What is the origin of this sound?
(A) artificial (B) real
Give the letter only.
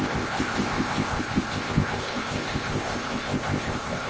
A